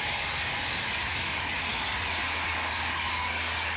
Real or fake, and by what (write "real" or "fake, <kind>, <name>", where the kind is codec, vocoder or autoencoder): fake, codec, DAC